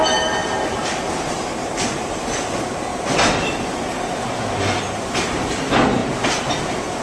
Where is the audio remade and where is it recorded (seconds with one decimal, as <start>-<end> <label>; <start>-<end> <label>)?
0.0-0.4 recorded; 0.4-1.3 remade; 1.3-6.0 recorded; 6.0-6.6 remade; 6.6-7.0 recorded